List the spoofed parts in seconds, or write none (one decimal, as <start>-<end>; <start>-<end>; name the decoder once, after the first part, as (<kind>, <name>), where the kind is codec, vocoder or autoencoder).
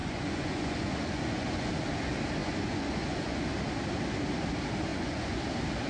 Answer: 0.0-1.7 (vocoder, Vocos); 2.4-3.4; 4.9-5.4